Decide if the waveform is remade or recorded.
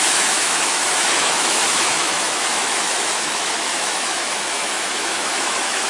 remade